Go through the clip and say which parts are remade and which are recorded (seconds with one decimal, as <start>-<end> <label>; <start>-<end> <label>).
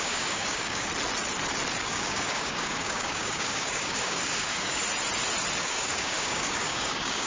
0.0-0.9 remade; 0.9-1.8 recorded; 1.8-4.8 remade; 4.8-5.6 recorded; 5.6-7.3 remade